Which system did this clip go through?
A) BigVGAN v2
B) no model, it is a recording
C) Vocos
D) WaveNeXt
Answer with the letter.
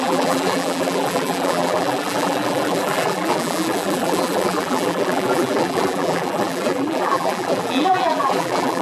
A